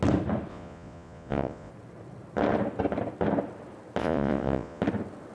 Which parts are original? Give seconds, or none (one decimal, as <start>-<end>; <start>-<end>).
0.0-0.5; 1.7-4.0; 4.8-5.3